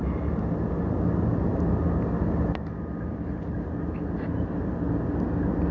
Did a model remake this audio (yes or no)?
no